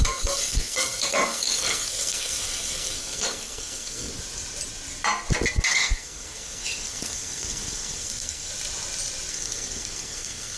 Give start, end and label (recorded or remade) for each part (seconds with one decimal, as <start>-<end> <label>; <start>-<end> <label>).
0.0-4.1 remade; 4.1-5.7 recorded; 5.7-8.5 remade; 8.5-9.3 recorded; 9.3-10.6 remade